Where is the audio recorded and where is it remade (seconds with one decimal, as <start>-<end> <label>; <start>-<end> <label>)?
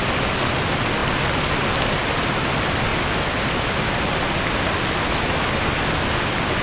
0.0-6.6 recorded